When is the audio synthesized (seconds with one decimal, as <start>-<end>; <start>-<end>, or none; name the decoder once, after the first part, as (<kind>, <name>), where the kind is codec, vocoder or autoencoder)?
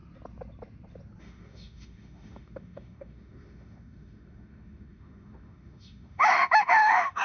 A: 1.2-7.2 (autoencoder, DAC-VAE)